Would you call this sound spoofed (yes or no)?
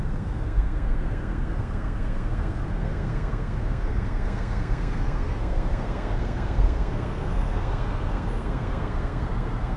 yes